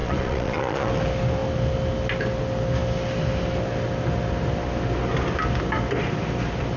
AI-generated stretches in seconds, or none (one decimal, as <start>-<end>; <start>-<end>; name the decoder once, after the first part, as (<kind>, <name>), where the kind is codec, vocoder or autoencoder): 0.0-0.9 (vocoder, Vocos)